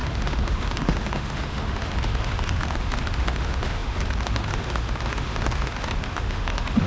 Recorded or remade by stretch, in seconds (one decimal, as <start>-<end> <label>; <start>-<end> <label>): 0.0-6.9 remade